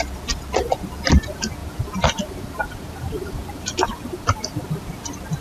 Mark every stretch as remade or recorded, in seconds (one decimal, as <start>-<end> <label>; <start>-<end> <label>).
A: 0.0-1.6 recorded; 1.6-4.8 remade; 4.8-5.4 recorded